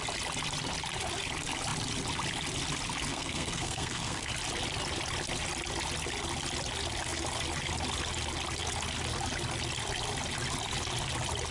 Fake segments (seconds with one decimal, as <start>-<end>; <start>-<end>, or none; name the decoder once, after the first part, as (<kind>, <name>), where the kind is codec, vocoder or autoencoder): 3.1-4.3 (codec, SNAC)